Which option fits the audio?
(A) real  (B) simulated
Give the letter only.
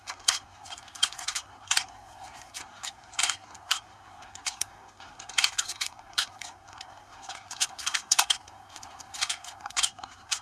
B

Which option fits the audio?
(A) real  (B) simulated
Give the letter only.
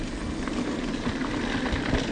A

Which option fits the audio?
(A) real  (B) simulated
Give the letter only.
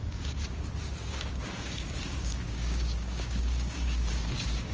B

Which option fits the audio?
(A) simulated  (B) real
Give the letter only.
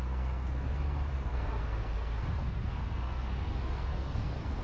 A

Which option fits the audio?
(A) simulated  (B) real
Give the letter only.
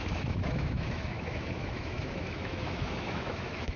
A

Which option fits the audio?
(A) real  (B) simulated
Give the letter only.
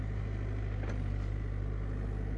A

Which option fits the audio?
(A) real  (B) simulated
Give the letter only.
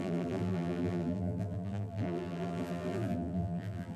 B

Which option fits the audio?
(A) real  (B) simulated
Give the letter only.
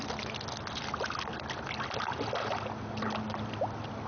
A